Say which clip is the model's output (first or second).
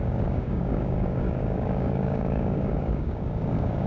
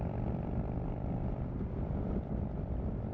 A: first